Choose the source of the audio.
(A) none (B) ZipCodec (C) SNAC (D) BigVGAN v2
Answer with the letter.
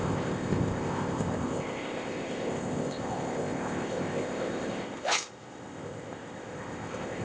B